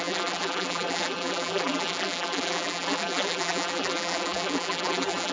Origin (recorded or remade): remade